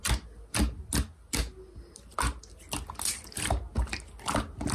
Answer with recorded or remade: recorded